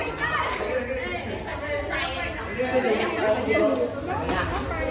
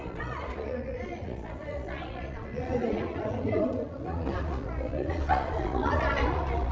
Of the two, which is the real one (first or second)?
first